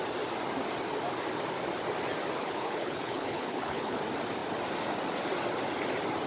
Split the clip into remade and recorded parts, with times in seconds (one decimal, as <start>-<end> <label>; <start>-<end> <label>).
0.0-2.4 recorded; 2.4-4.0 remade; 4.0-6.3 recorded